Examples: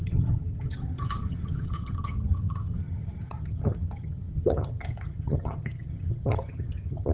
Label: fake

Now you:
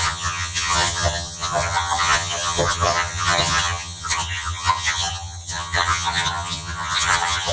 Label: fake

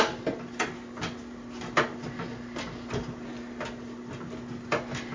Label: real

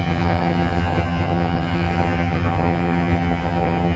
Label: fake